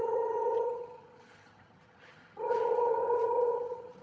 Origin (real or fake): fake